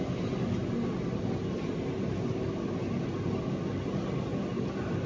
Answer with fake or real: real